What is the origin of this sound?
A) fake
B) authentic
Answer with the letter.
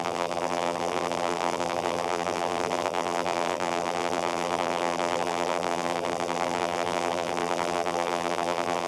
A